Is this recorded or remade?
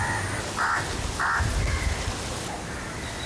recorded